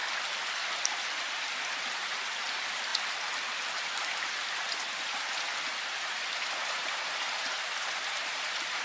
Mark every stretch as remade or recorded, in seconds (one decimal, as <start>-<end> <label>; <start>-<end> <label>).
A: 0.0-6.6 recorded; 6.6-8.8 remade